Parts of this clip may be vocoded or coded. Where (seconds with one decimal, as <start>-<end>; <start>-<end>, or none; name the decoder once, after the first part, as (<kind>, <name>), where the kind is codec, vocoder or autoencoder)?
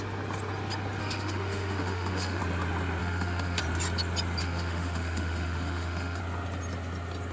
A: 1.0-2.4 (autoencoder, DAC-VAE); 3.0-3.6; 4.4-6.2